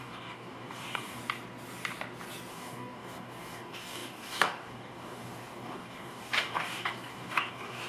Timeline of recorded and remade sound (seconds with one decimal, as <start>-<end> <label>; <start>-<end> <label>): 0.0-1.2 remade; 1.2-2.5 recorded; 2.5-7.9 remade